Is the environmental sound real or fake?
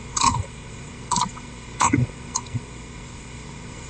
fake